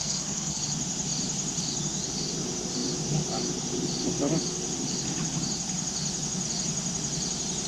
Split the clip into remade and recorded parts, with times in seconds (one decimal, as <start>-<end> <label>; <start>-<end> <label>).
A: 0.0-0.6 remade; 0.6-7.7 recorded

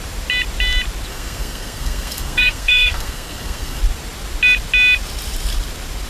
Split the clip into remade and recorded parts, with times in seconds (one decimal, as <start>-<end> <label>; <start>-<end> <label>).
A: 0.0-1.1 recorded; 1.1-3.8 remade; 3.8-6.1 recorded

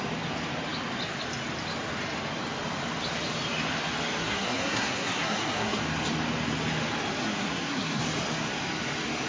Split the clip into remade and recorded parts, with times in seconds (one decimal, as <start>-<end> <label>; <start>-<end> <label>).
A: 0.0-4.2 recorded; 4.2-5.8 remade; 5.8-7.2 recorded; 7.2-8.0 remade; 8.0-9.3 recorded

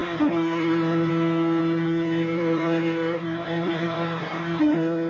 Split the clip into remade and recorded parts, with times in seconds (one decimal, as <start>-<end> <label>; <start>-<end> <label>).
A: 0.0-1.1 remade; 1.1-1.6 recorded; 1.6-5.1 remade